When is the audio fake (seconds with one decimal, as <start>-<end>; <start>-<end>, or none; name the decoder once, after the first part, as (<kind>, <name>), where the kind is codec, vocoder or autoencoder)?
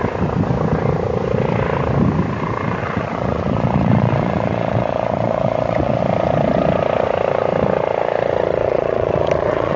2.8-6.0 (vocoder, Vocos); 8.6-9.8